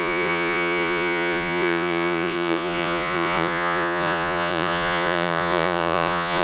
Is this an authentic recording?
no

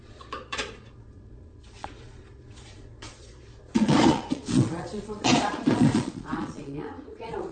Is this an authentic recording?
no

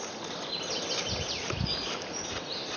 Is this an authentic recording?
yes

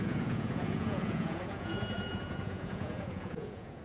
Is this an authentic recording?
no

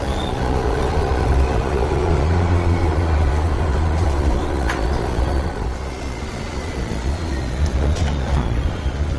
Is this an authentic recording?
no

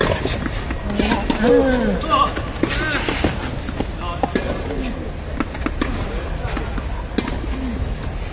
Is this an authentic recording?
yes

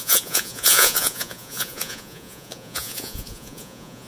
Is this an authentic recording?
no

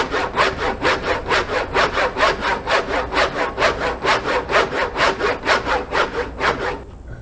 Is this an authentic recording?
yes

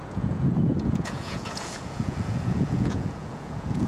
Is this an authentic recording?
no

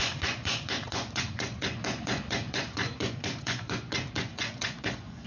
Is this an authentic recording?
no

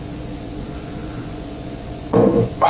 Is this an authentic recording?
no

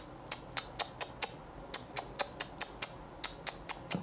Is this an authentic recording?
yes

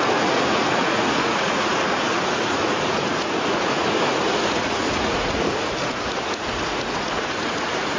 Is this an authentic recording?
no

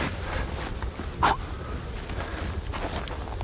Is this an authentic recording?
yes